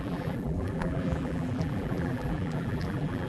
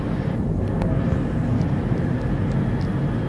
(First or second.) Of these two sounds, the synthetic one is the first